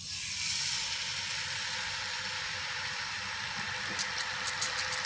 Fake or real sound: real